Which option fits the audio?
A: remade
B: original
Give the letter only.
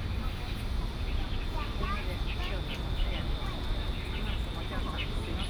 B